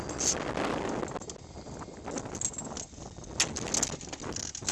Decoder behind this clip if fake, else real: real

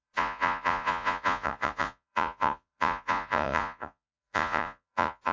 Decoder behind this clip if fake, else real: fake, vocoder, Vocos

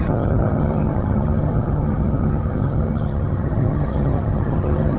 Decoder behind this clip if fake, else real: fake, vocoder, HiFi-GAN